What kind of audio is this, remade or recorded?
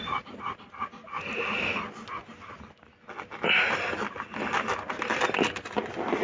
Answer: recorded